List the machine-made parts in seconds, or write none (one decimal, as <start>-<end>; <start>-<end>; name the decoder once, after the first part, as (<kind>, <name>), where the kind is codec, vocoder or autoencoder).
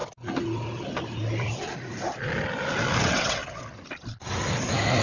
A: 3.0-3.4 (vocoder, WaveNeXt)